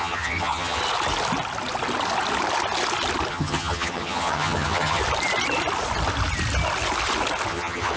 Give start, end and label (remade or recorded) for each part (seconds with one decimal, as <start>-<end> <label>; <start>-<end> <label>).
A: 0.0-0.8 remade; 0.8-3.3 recorded; 3.3-5.0 remade; 5.0-7.5 recorded; 7.5-8.0 remade